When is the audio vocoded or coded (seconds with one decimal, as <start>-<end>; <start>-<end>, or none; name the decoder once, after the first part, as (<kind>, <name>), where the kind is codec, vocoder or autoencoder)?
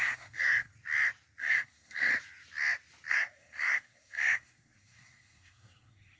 0.0-0.7 (codec, SNAC); 1.4-2.1; 3.1-6.2